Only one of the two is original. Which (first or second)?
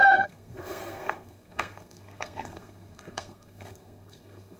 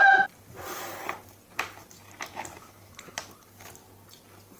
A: second